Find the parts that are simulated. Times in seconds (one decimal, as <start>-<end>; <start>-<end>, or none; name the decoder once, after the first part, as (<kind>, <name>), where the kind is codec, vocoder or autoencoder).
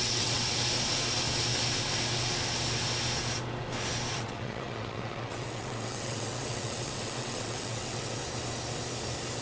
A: 0.0-0.6 (vocoder, WaveNeXt); 4.1-8.2